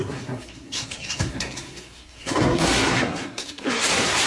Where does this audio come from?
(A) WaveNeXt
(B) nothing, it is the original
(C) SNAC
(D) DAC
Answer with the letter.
C